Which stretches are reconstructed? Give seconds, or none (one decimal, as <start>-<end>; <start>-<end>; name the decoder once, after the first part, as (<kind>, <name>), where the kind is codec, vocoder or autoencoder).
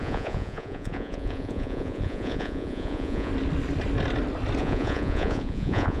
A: 0.0-3.3 (vocoder, Vocos); 4.6-6.0